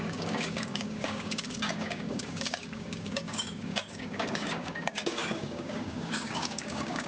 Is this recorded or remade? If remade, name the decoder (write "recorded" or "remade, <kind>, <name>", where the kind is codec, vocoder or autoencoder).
remade, codec, DAC